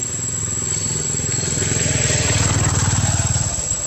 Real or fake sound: fake